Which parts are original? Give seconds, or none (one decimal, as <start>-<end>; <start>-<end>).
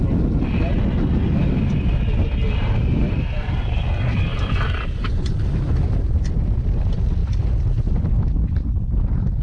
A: 0.0-9.4